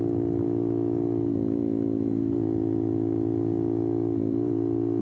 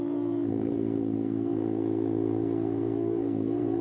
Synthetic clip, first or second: second